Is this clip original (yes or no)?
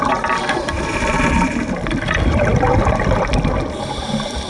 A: yes